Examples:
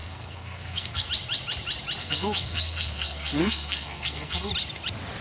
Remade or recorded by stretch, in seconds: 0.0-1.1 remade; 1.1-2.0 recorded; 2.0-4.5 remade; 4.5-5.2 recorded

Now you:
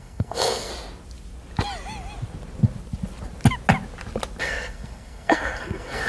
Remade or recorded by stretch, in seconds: 0.0-0.7 remade; 0.7-4.4 recorded; 4.4-6.1 remade

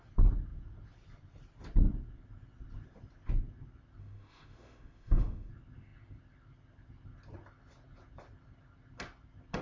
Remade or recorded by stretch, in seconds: 0.0-4.0 recorded; 4.0-5.5 remade; 5.5-9.6 recorded

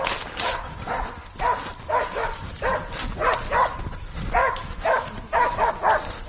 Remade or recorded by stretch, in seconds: 0.0-4.4 recorded; 4.4-5.7 remade; 5.7-6.3 recorded

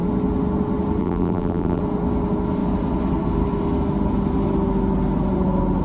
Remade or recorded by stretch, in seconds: 0.0-1.0 recorded; 1.0-1.8 remade; 1.8-5.8 recorded

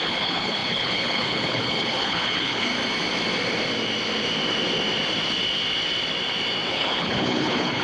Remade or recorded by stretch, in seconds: 0.0-2.7 remade; 2.7-6.7 recorded; 6.7-7.8 remade

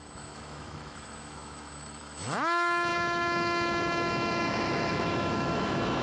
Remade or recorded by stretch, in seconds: 0.0-6.0 remade